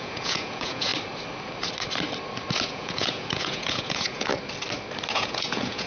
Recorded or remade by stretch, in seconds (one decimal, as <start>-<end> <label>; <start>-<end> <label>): 0.0-0.9 remade; 0.9-2.7 recorded; 2.7-4.3 remade; 4.3-5.1 recorded; 5.1-5.9 remade